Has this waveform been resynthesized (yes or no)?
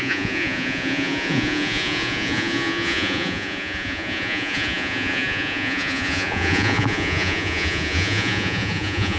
yes